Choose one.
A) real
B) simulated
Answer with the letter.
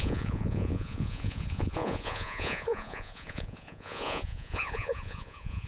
B